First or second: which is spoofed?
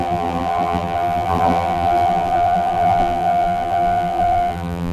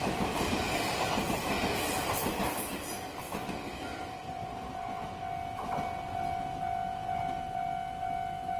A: first